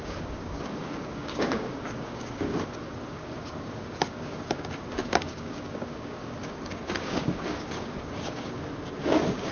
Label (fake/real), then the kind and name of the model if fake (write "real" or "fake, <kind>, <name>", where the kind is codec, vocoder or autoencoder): fake, codec, DAC